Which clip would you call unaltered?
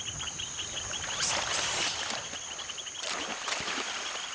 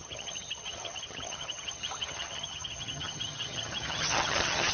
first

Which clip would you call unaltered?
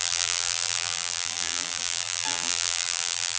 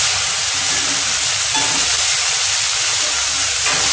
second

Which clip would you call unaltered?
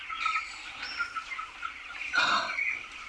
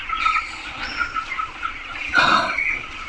first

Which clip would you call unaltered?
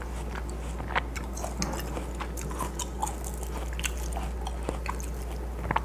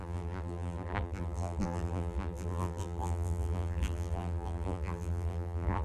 first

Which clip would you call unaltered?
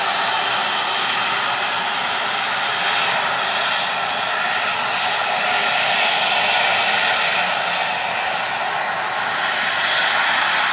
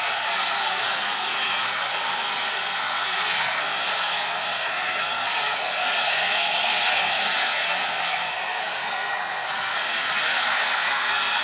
first